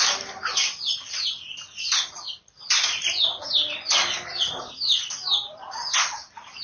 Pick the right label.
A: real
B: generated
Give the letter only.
A